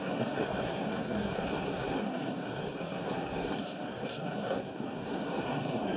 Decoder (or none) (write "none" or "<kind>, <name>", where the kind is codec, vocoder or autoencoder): codec, SNAC